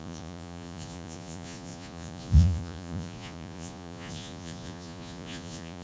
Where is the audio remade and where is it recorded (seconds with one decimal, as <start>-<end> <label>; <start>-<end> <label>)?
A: 0.0-5.8 remade